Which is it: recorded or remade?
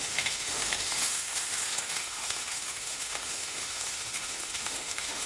remade